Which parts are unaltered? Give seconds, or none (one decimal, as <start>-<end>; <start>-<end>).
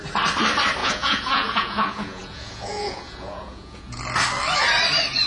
0.0-0.8; 4.0-5.3